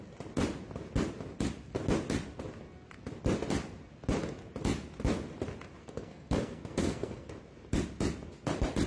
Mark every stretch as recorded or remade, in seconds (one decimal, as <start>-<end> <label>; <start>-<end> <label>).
0.0-5.8 recorded; 5.8-7.3 remade; 7.3-8.9 recorded